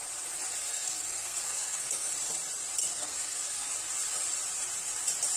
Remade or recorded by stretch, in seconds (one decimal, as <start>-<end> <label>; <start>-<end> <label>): 0.0-0.6 recorded; 0.6-2.1 remade; 2.1-2.8 recorded; 2.8-3.7 remade; 3.7-5.4 recorded